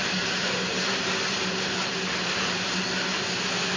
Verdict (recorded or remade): recorded